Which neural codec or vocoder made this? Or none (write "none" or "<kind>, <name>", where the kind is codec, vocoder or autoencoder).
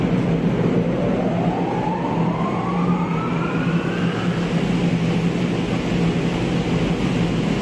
none